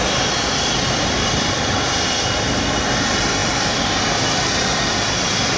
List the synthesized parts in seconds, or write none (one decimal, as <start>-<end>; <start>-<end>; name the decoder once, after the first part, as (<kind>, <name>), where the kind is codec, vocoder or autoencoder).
none